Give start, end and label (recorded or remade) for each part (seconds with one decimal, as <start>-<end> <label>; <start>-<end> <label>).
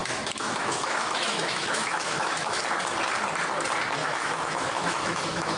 0.0-2.6 remade; 2.6-4.0 recorded; 4.0-5.6 remade